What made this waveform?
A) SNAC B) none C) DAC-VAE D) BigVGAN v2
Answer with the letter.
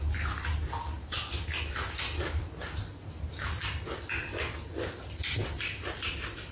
B